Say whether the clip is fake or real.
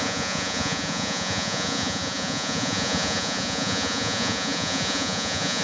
fake